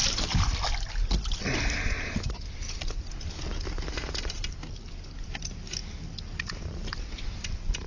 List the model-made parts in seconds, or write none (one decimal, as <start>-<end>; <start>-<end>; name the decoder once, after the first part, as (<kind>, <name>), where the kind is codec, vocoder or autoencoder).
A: none